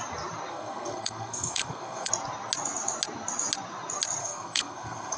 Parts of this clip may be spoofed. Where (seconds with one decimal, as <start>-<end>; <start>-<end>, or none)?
0.5-2.1; 4.2-5.2